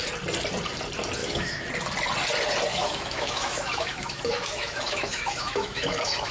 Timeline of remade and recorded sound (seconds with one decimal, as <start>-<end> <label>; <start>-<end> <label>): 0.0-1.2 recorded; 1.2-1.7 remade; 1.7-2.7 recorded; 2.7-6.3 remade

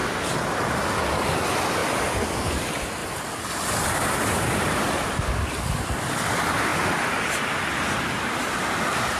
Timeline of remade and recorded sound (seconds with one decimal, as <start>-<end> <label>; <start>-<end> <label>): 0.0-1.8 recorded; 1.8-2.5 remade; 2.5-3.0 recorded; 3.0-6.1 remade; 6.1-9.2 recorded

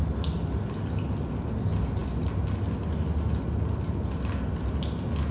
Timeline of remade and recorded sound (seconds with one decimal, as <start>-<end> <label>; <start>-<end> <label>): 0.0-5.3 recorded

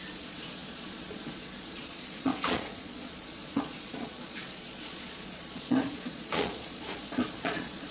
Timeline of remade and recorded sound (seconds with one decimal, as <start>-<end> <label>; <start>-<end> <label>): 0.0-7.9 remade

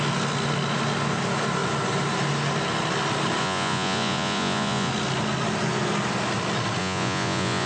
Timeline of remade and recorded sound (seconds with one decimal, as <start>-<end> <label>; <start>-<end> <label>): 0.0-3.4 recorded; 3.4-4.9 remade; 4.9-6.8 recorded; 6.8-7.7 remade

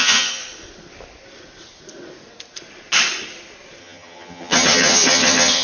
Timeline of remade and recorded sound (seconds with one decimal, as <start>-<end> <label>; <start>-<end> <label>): 0.0-0.4 remade; 0.4-3.8 recorded; 3.8-5.6 remade

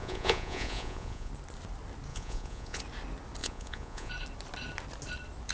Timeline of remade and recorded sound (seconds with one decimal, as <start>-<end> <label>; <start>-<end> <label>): 0.0-1.3 remade; 1.3-2.1 recorded; 2.1-2.8 remade; 2.8-3.4 recorded; 3.4-4.1 remade; 4.1-5.5 recorded